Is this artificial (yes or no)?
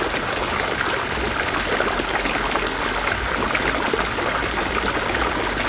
no